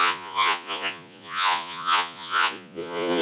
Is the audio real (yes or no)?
no